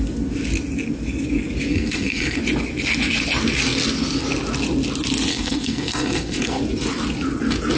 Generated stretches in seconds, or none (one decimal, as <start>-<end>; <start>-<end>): 1.7-2.4; 5.3-6.6